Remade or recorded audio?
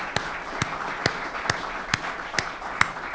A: recorded